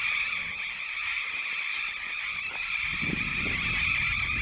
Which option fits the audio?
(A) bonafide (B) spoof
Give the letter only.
A